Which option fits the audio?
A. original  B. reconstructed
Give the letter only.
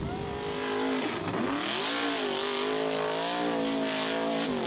A